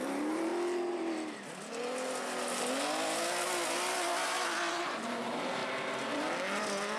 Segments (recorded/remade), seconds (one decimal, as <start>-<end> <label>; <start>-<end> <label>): 0.0-0.5 remade; 0.5-4.7 recorded; 4.7-5.6 remade; 5.6-7.0 recorded